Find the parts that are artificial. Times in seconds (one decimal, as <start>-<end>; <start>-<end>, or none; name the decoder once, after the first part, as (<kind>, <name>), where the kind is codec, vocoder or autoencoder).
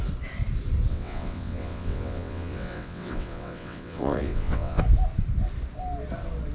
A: 0.9-4.8 (vocoder, WaveNeXt)